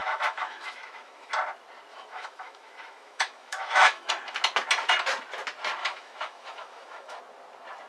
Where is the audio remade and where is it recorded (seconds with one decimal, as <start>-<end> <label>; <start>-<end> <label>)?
0.0-1.3 remade; 1.3-1.9 recorded; 1.9-4.1 remade; 4.1-5.8 recorded; 5.8-7.2 remade; 7.2-7.9 recorded